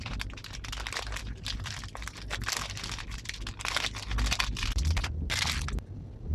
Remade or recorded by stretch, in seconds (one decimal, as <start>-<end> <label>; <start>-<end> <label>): 0.0-6.3 recorded